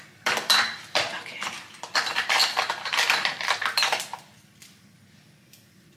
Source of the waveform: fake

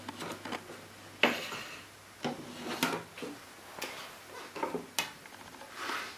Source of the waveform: real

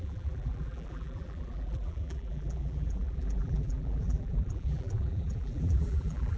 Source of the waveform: fake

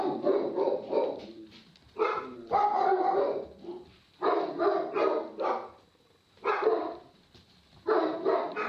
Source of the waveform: fake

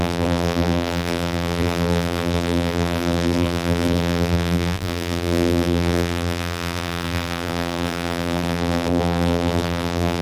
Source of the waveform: fake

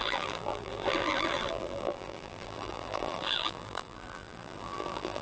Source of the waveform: fake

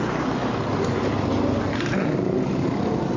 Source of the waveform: real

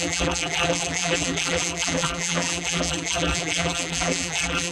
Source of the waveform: fake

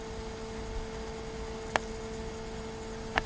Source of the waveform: real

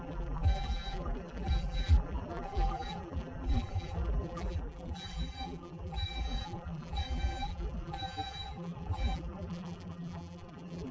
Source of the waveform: fake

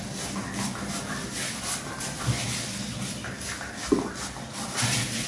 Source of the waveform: real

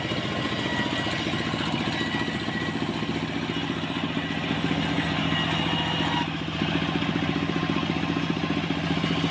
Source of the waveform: real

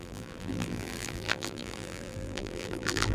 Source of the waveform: fake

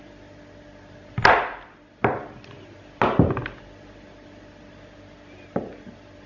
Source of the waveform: real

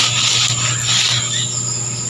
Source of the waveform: real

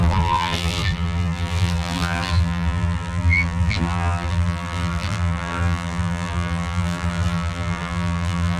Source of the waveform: fake